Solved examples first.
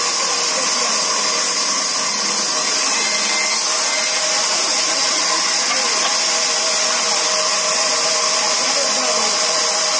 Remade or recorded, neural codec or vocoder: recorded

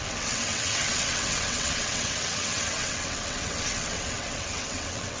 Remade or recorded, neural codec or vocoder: remade, vocoder, WaveNeXt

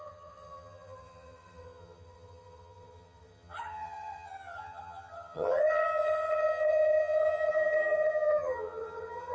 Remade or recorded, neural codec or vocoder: remade, vocoder, HiFi-GAN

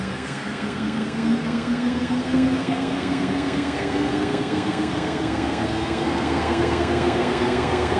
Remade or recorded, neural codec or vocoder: remade, codec, SNAC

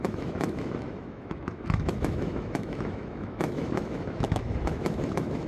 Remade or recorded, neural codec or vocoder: remade, autoencoder, DAC-VAE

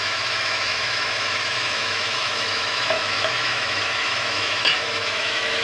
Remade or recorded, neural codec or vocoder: remade, autoencoder, DAC-VAE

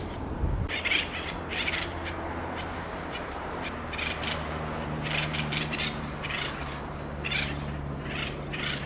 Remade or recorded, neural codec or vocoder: remade, vocoder, BigVGAN v2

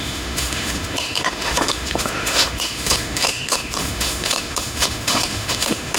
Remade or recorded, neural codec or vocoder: remade, autoencoder, DAC-VAE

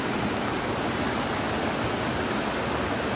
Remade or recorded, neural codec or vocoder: recorded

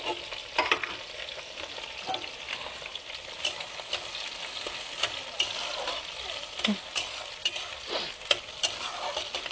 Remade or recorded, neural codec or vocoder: recorded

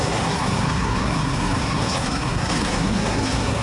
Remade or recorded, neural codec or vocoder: remade, codec, SNAC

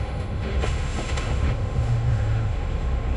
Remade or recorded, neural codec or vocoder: remade, autoencoder, DAC-VAE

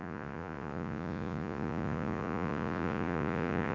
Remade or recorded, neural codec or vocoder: remade, vocoder, Vocos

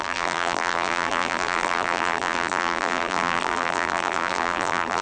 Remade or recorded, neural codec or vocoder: remade, vocoder, BigVGAN v2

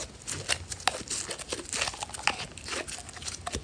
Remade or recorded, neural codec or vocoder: recorded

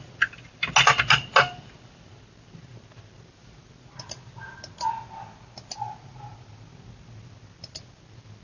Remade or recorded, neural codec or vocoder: recorded